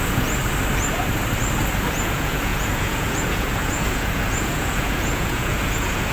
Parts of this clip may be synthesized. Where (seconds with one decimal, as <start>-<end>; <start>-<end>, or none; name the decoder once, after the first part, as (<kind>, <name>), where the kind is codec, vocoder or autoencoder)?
0.0-0.4 (vocoder, Vocos); 1.9-6.1